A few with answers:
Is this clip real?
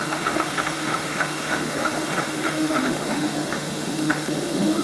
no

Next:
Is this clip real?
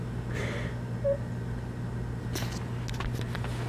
yes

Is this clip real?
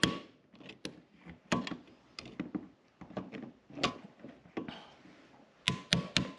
yes